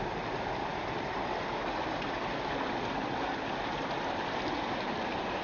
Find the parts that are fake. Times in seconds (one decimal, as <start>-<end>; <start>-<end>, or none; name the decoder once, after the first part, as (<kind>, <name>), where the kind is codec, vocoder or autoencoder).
none